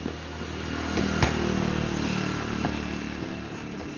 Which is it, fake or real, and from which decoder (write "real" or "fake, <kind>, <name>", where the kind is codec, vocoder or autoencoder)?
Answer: real